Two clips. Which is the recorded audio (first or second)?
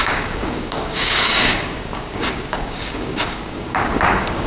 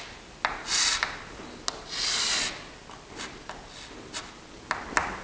second